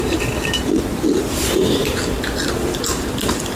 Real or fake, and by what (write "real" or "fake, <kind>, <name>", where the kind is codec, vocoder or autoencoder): fake, vocoder, BigVGAN v2